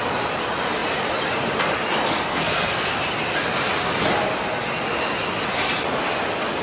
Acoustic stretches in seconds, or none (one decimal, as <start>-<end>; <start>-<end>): 0.0-2.3; 2.9-6.6